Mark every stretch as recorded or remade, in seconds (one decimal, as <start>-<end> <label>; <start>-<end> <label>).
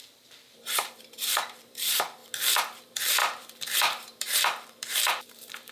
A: 0.0-2.2 remade; 2.2-2.8 recorded; 2.8-5.7 remade